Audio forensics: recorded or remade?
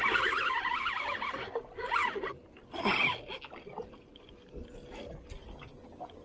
recorded